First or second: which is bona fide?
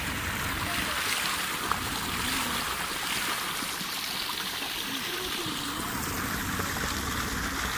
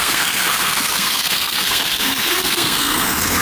first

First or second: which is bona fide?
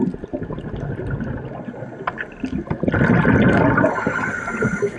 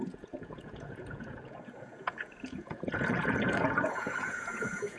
first